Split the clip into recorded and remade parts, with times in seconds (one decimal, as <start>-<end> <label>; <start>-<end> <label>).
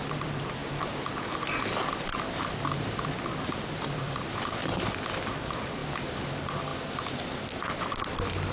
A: 0.0-0.6 remade; 0.6-2.4 recorded; 2.4-5.8 remade; 5.8-6.3 recorded; 6.3-6.7 remade; 6.7-7.6 recorded; 7.6-8.5 remade